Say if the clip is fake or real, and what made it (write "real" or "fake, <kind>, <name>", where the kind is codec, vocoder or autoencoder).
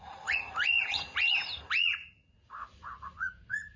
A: fake, vocoder, Vocos